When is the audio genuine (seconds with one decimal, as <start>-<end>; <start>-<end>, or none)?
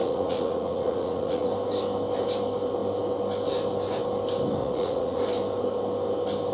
1.5-4.6; 5.2-6.5